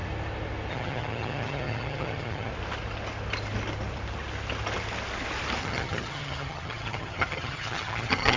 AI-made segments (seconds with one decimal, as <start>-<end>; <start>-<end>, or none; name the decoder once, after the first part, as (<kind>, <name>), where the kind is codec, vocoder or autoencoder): 0.7-2.5 (vocoder, HiFi-GAN); 5.6-8.4